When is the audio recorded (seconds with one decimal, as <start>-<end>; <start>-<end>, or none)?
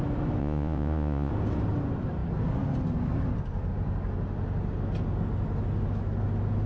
0.0-0.4; 1.3-6.7